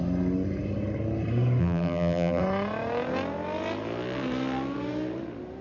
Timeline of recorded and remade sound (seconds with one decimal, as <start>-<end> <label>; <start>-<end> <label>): 0.0-1.6 recorded; 1.6-2.4 remade; 2.4-5.6 recorded